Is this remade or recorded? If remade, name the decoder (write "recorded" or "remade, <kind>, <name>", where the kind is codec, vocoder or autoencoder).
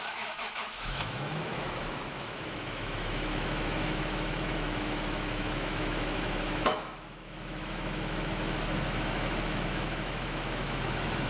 remade, autoencoder, DAC-VAE